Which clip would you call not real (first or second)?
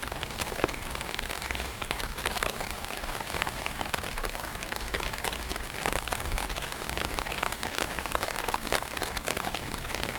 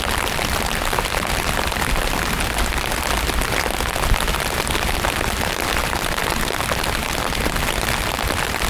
first